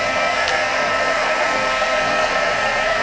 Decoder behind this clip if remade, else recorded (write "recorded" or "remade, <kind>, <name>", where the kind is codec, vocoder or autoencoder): remade, codec, SNAC